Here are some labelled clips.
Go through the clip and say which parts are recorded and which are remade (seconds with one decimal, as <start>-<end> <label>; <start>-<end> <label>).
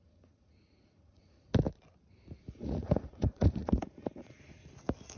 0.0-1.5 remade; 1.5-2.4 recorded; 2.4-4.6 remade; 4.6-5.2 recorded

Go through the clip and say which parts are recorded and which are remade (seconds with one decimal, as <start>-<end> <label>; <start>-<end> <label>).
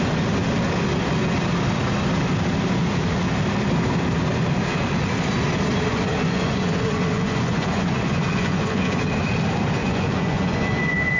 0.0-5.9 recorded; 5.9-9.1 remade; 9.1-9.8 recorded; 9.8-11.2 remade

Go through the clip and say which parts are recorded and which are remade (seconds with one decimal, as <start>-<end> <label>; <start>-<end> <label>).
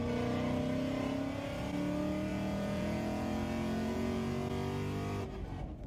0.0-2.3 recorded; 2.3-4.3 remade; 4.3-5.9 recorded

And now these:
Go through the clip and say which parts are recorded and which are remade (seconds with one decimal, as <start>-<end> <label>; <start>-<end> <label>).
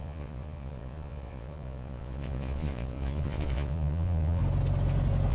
0.0-4.4 remade; 4.4-5.3 recorded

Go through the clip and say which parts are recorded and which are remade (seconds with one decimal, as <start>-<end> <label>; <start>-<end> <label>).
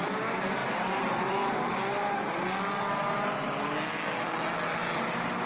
0.0-5.5 recorded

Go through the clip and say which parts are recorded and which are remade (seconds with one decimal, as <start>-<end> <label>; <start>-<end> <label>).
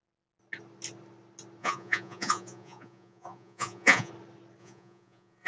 0.0-1.6 recorded; 1.6-4.1 remade; 4.1-4.6 recorded; 4.6-5.5 remade